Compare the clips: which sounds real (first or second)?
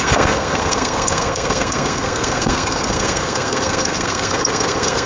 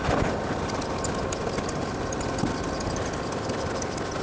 second